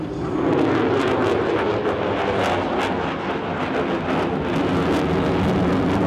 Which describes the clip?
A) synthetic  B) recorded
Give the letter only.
B